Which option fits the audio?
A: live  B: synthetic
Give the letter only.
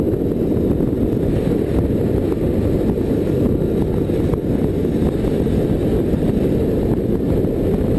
A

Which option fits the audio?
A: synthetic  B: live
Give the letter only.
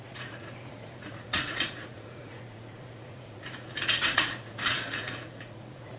A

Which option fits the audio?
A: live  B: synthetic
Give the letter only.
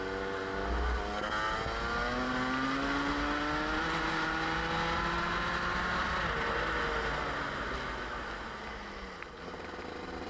A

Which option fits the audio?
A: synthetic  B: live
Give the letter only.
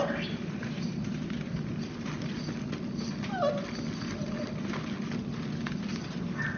B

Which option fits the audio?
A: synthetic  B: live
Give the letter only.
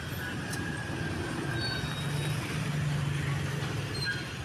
B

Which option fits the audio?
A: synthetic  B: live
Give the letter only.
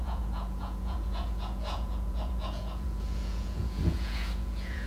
A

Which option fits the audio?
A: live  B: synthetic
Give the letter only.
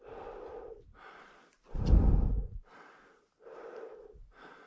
A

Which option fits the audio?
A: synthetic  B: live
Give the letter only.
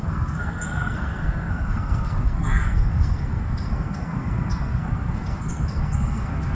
A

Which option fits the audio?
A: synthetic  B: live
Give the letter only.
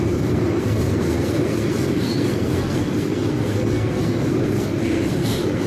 A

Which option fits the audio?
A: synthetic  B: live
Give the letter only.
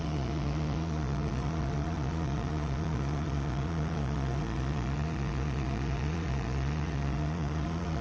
A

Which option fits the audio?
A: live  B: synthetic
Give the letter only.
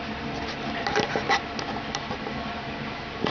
A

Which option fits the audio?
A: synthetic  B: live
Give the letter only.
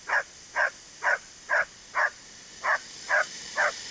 B